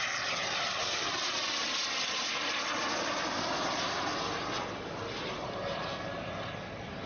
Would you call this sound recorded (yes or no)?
yes